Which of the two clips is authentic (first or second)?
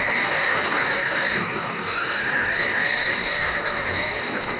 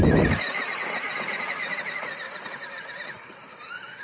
second